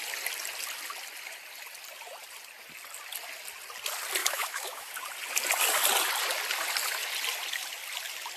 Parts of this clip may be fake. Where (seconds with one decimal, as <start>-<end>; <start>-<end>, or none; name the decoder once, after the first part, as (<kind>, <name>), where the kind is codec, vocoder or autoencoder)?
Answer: 4.2-4.9 (autoencoder, DAC-VAE)